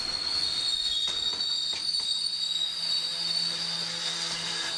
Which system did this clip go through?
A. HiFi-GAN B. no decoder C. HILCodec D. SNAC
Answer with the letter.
B